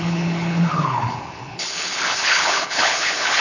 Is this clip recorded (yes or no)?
no